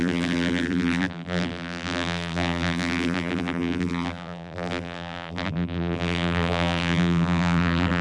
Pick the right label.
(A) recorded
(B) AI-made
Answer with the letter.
B